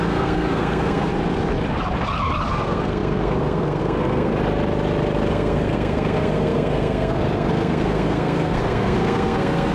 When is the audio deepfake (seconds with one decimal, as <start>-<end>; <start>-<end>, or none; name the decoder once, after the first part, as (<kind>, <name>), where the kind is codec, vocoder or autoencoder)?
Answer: 0.0-1.1 (codec, SNAC); 2.5-4.3; 5.3-9.7

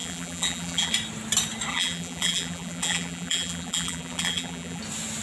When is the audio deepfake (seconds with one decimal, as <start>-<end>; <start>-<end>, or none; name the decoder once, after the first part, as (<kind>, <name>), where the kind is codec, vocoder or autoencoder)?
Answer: 0.0-0.9 (vocoder, BigVGAN v2); 1.7-4.8